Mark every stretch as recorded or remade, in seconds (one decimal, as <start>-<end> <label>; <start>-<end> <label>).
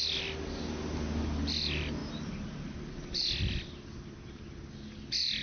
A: 0.0-5.4 recorded